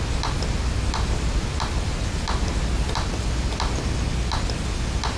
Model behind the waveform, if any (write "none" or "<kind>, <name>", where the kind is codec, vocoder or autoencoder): none